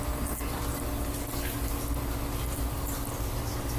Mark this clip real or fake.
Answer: real